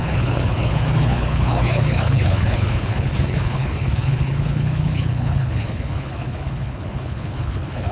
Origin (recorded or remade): remade